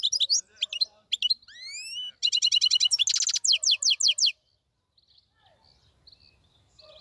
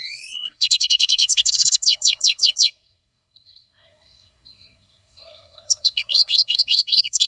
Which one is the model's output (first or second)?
second